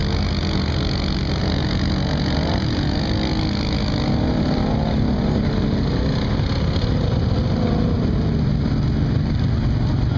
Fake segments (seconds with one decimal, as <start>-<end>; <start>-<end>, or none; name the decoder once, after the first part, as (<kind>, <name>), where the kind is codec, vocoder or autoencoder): none